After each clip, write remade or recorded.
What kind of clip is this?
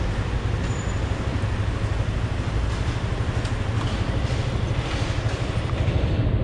recorded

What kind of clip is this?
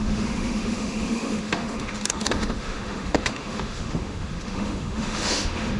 remade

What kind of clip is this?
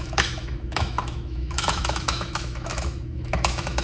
remade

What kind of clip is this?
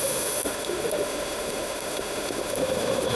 remade